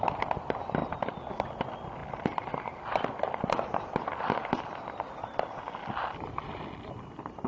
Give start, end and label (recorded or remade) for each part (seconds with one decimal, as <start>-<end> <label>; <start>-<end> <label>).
0.0-7.5 recorded